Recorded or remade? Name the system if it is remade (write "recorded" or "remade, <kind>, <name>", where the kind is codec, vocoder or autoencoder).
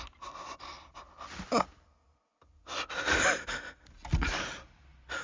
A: recorded